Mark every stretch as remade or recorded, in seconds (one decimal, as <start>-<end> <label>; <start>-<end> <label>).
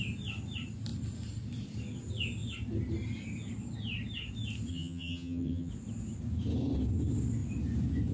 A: 0.0-4.7 recorded; 4.7-5.7 remade; 5.7-8.1 recorded